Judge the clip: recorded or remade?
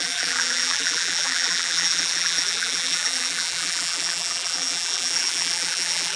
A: remade